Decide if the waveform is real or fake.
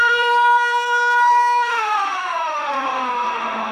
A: fake